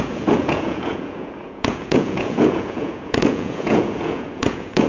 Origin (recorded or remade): remade